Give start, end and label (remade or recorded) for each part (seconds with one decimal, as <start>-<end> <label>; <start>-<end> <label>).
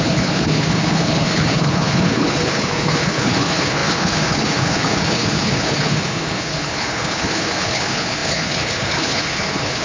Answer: 0.0-9.8 remade